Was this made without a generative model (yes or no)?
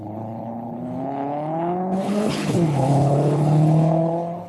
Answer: no